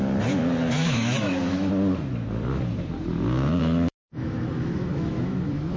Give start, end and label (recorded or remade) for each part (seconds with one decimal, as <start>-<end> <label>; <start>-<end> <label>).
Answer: 0.0-0.8 recorded; 0.8-1.7 remade; 1.7-3.6 recorded; 3.6-5.8 remade